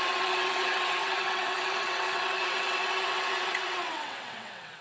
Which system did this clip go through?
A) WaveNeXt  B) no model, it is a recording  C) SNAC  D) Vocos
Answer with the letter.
A